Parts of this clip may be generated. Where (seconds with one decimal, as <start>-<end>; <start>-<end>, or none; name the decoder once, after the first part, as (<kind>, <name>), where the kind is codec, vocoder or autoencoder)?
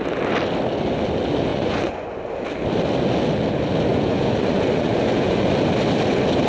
1.5-2.2 (vocoder, Vocos); 3.9-5.5